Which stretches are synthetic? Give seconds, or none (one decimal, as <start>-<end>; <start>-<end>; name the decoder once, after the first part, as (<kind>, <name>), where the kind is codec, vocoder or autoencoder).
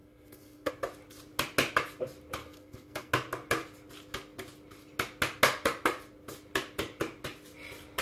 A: 0.0-0.7 (codec, SNAC); 2.4-3.1